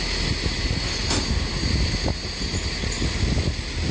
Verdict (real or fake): real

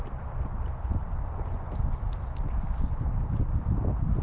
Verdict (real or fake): real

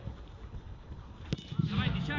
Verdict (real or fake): real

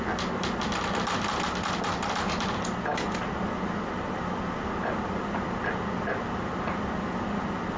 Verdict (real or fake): real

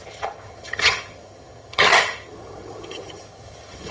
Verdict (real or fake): fake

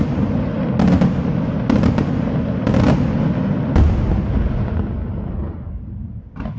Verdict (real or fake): real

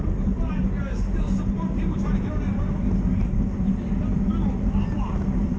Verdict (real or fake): real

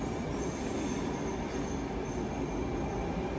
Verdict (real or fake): real